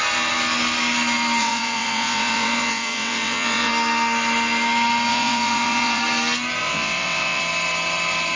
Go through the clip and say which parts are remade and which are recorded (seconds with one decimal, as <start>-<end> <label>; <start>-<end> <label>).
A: 0.0-1.4 recorded; 1.4-3.7 remade; 3.7-5.1 recorded; 5.1-6.0 remade; 6.0-6.6 recorded; 6.6-7.4 remade; 7.4-8.4 recorded